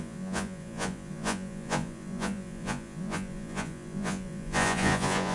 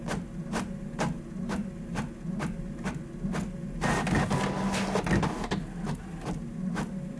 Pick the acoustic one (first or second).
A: second